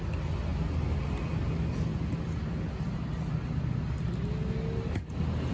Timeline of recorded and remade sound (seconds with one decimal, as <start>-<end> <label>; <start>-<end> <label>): 0.0-5.5 recorded

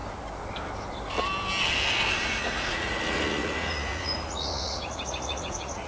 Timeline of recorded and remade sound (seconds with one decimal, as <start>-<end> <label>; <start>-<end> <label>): 0.0-2.1 recorded; 2.1-5.9 remade

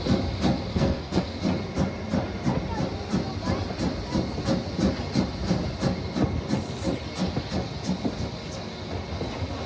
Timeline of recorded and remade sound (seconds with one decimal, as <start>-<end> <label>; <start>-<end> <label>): 0.0-0.7 recorded; 0.7-1.4 remade; 1.4-9.7 recorded

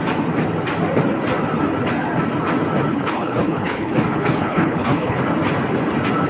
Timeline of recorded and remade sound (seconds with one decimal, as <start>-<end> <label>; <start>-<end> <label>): 0.0-2.9 recorded; 2.9-5.2 remade; 5.2-6.3 recorded

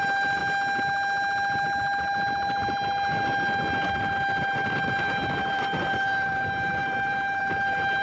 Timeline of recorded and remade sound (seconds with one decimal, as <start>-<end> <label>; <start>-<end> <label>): 0.0-0.4 remade; 0.4-4.7 recorded; 4.7-8.0 remade

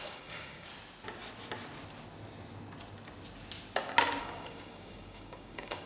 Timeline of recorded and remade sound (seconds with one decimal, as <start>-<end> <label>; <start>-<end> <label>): 0.0-0.7 remade; 0.7-4.2 recorded; 4.2-5.9 remade